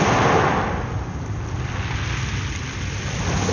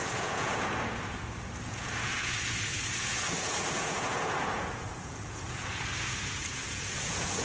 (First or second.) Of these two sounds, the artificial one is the second